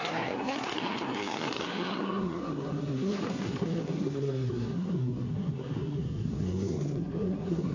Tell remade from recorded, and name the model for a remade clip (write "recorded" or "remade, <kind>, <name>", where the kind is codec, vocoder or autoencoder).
remade, codec, SNAC